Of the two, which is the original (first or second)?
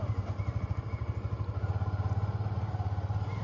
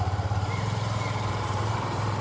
first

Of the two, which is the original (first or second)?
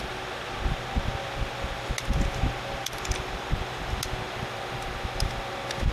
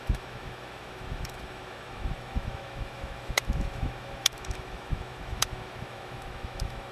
first